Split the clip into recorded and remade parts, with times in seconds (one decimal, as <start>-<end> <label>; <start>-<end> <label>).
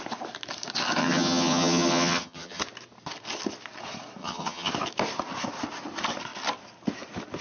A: 0.0-1.0 recorded; 1.0-2.6 remade; 2.6-4.2 recorded; 4.2-4.7 remade; 4.7-7.4 recorded